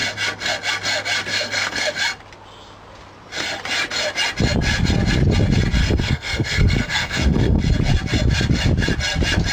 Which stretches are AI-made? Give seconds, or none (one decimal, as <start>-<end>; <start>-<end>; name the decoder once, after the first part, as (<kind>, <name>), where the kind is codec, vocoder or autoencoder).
1.3-1.9 (codec, SNAC); 5.8-7.6